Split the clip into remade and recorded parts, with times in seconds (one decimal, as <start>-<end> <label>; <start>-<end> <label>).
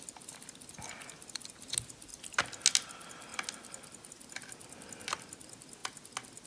0.0-2.1 recorded; 2.1-2.6 remade; 2.6-6.5 recorded